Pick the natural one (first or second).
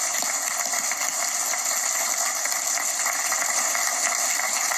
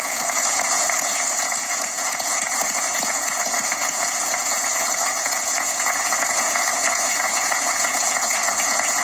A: first